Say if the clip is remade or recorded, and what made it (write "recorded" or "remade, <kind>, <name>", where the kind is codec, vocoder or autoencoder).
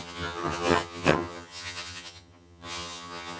remade, vocoder, HiFi-GAN